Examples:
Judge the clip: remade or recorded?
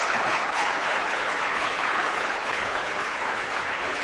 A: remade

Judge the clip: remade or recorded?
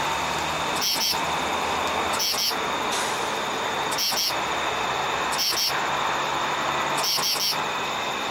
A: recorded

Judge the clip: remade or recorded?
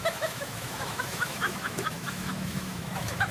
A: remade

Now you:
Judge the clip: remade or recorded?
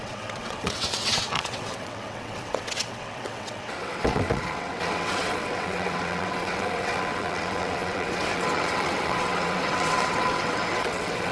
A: remade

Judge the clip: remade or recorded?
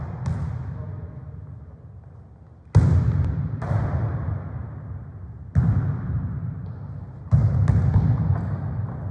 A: recorded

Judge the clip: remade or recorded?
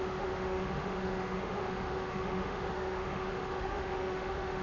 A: remade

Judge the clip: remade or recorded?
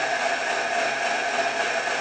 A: recorded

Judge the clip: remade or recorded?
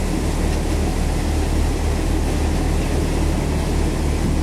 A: recorded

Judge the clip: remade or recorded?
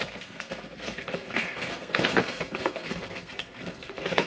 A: remade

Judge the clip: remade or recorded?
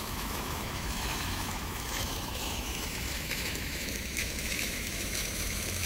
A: remade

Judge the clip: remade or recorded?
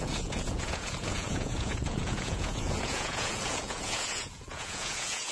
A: remade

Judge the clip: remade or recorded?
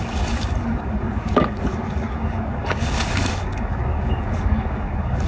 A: remade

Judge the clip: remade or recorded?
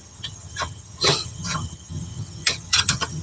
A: remade